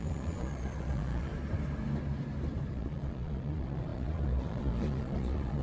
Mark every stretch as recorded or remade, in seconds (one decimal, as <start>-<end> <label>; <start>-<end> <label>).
0.0-1.3 remade; 1.3-2.7 recorded; 2.7-5.6 remade